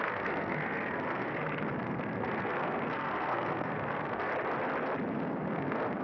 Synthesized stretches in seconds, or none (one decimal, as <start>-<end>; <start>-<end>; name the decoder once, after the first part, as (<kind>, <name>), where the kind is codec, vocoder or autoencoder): 0.0-4.3 (codec, SNAC); 5.1-6.0